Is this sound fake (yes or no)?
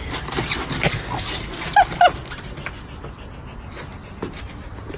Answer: no